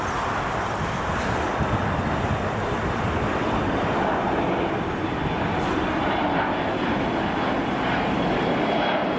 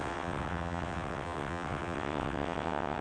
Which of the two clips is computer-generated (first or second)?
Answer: second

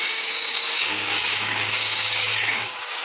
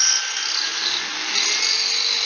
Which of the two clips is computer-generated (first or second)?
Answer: first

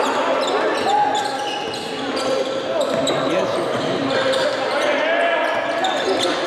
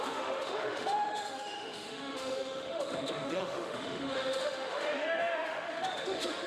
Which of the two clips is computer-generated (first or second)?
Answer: second